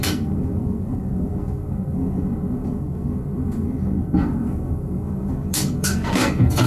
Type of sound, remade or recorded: remade